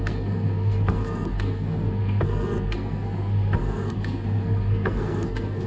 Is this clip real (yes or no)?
no